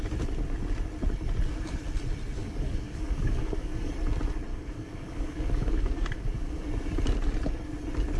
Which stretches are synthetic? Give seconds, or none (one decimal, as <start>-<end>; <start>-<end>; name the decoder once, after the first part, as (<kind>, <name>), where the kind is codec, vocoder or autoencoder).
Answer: 2.4-3.9 (codec, DAC); 4.5-6.7